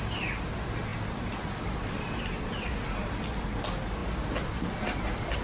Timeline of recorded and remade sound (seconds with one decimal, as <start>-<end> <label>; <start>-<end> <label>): 0.0-5.4 recorded